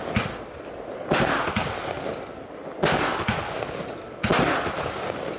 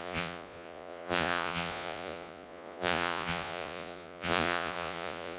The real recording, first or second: first